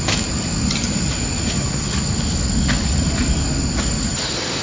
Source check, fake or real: real